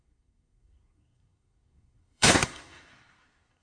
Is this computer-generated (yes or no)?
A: yes